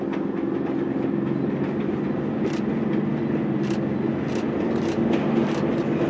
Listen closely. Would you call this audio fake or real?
real